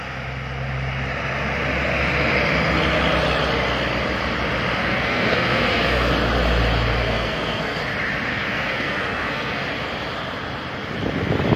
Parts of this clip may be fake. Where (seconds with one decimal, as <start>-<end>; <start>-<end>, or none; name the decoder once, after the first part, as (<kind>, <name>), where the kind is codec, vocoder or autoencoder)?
4.7-6.1 (codec, SNAC); 7.0-7.8; 8.3-9.7

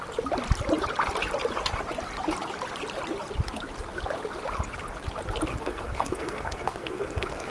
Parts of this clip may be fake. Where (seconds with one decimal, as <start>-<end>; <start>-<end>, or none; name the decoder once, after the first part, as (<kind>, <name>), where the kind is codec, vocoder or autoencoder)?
5.5-7.5 (codec, SNAC)